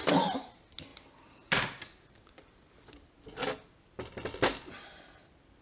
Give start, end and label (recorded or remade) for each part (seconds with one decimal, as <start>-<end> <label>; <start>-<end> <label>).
0.0-5.6 recorded